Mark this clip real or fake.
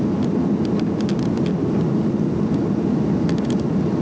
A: real